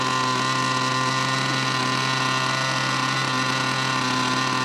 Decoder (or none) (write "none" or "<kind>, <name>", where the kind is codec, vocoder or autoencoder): none